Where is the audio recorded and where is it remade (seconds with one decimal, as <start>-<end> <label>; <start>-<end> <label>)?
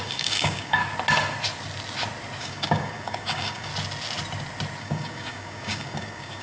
0.0-0.8 remade; 0.8-2.4 recorded; 2.4-3.7 remade; 3.7-4.8 recorded; 4.8-6.4 remade